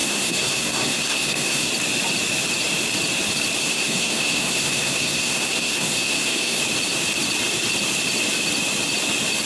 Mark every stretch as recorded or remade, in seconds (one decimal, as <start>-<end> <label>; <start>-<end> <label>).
0.0-1.7 remade; 1.7-3.6 recorded; 3.6-6.6 remade; 6.6-9.5 recorded